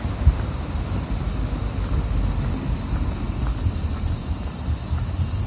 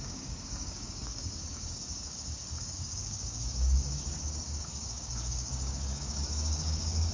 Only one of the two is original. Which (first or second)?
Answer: first